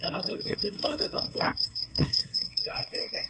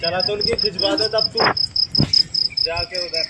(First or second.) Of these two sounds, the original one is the second